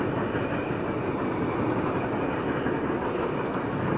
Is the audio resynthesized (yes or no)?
no